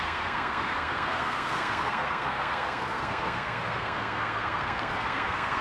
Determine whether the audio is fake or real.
fake